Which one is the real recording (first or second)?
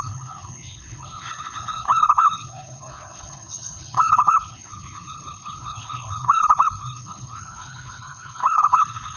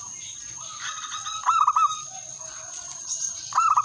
second